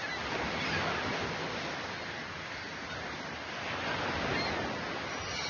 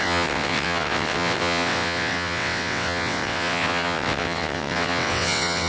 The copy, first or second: second